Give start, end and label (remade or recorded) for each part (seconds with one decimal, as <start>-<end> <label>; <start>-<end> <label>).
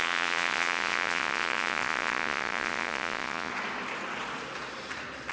0.0-3.5 remade; 3.5-5.3 recorded